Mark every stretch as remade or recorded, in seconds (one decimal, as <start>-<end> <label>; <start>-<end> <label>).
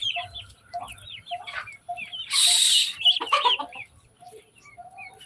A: 0.0-5.3 recorded